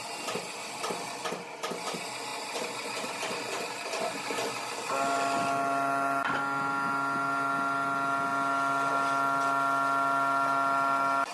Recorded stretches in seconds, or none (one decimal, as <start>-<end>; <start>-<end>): 0.0-2.3; 3.2-11.3